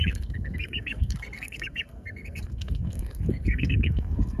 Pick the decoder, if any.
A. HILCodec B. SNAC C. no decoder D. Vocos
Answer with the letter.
B